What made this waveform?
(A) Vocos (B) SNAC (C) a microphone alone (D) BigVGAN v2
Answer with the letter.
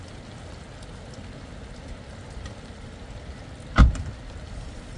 C